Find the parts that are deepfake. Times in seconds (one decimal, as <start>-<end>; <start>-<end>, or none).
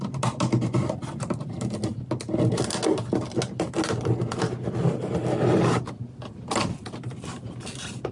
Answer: none